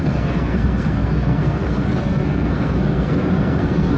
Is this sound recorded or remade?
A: remade